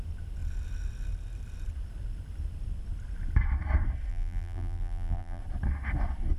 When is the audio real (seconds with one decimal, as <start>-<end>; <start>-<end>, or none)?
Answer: 0.0-4.1; 5.4-6.4

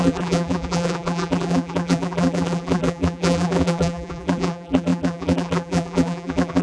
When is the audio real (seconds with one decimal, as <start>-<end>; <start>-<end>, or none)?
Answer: none

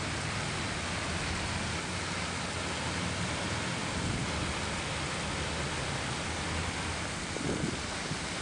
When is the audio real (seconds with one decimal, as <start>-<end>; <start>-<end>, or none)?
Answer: 0.0-8.4

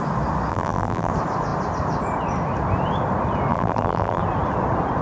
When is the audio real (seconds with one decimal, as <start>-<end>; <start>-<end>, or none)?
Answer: 0.0-0.5; 1.1-3.5; 4.2-5.0